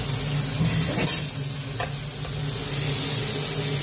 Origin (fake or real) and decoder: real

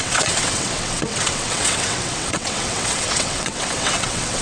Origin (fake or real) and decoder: fake, vocoder, WaveNeXt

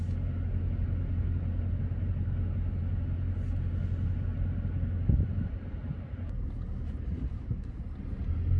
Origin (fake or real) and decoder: real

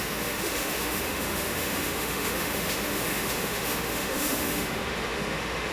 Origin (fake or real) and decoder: fake, autoencoder, DAC-VAE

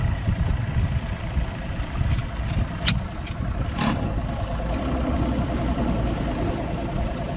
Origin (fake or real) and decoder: real